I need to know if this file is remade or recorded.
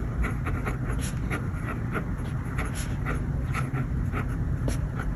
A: remade